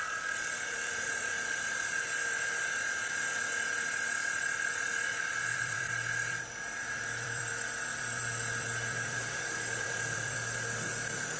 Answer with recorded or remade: remade